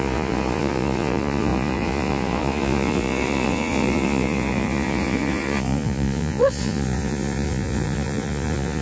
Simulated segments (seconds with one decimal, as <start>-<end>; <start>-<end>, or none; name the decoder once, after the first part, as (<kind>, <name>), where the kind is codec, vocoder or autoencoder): 0.0-8.8 (vocoder, Vocos)